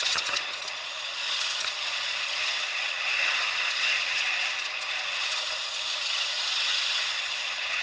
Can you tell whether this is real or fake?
fake